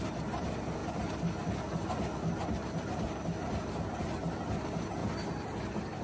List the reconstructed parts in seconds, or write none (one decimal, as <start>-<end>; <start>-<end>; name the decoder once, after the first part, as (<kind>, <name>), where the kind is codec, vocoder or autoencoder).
none